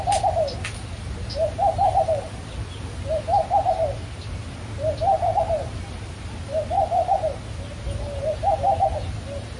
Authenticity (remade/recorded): recorded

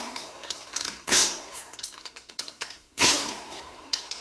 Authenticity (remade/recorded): remade